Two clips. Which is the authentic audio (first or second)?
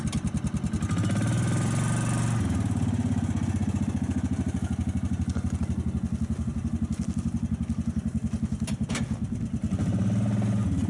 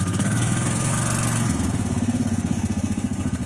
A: first